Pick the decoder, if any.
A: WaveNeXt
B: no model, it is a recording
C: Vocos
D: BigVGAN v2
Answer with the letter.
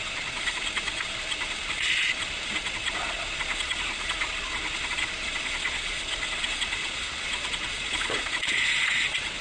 C